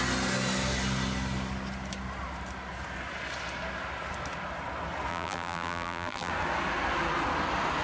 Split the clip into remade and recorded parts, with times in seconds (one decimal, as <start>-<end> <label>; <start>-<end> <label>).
0.0-5.1 recorded; 5.1-6.3 remade; 6.3-7.8 recorded